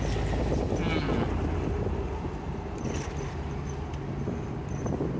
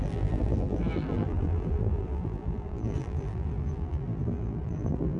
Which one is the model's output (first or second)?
second